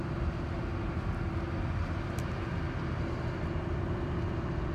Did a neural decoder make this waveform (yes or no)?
no